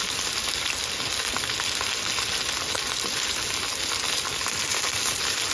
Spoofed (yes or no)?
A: no